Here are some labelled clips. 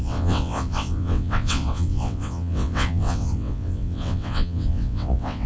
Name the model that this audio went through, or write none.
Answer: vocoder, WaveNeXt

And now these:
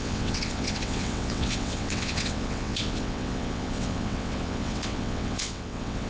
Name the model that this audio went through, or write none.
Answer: vocoder, WaveNeXt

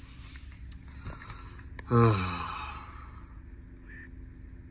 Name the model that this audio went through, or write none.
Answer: none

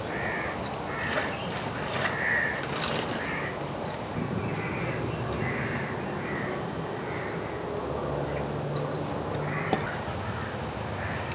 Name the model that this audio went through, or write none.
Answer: none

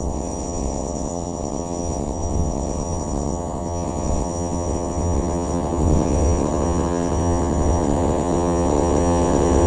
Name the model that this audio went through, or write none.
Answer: vocoder, WaveNeXt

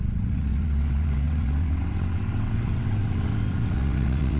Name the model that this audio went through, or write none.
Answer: vocoder, WaveNeXt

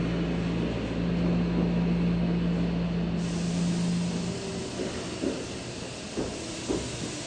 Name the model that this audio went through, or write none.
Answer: none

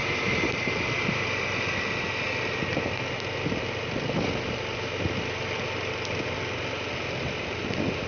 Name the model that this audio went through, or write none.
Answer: none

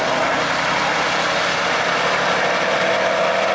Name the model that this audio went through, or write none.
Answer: none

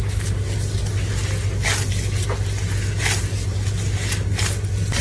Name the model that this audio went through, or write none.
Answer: none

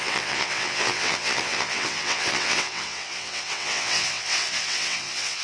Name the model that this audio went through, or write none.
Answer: vocoder, WaveNeXt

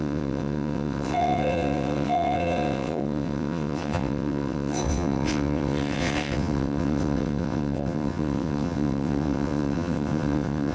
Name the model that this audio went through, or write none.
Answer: vocoder, WaveNeXt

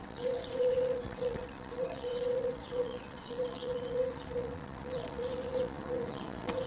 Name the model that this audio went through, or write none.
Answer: vocoder, WaveNeXt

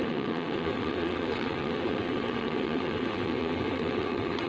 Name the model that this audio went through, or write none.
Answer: vocoder, WaveNeXt